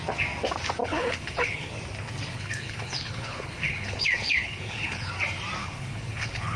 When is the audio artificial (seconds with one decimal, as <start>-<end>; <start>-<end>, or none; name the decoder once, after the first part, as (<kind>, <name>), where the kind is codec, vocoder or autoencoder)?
0.8-1.7 (codec, HILCodec); 2.3-5.1; 5.6-6.6